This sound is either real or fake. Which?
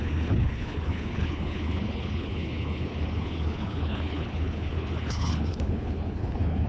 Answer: fake